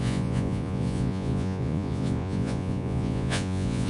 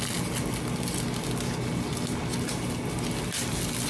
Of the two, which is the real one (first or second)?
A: second